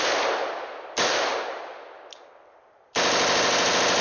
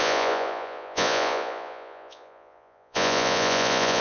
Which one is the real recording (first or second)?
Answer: first